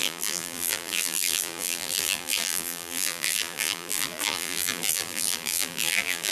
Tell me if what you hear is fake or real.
fake